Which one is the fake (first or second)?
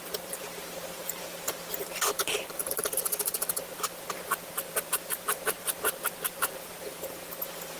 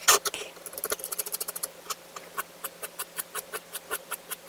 first